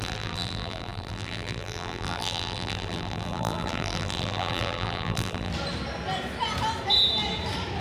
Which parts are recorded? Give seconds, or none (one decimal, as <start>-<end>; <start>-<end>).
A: 5.5-7.8

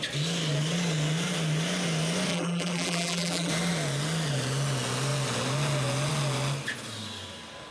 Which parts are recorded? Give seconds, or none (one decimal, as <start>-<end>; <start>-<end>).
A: 0.0-2.3; 3.5-7.7

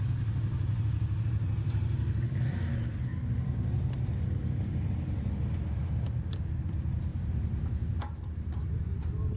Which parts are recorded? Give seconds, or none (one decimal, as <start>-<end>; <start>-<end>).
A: 0.0-3.1; 4.1-7.1; 7.9-9.4

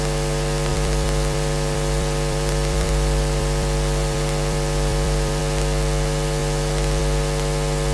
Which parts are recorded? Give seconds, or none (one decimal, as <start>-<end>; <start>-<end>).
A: 0.0-0.7; 5.4-6.4; 7.0-7.9

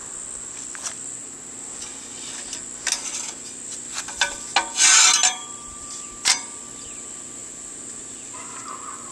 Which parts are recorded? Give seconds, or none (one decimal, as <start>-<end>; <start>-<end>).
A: 0.0-5.2; 6.1-7.4; 8.5-9.1

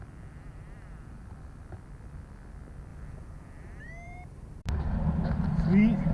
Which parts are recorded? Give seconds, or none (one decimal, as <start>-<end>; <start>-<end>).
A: 0.0-2.9; 4.7-6.1